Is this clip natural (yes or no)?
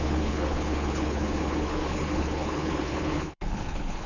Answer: no